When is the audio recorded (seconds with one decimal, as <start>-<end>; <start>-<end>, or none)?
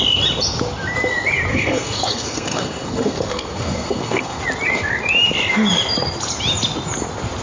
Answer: 0.0-1.5; 4.4-7.4